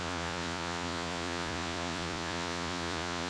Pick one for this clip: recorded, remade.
remade